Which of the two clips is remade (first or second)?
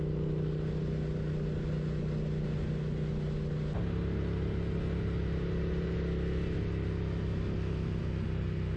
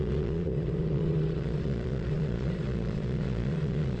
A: second